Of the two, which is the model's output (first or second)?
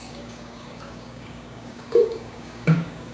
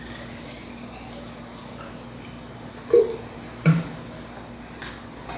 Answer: first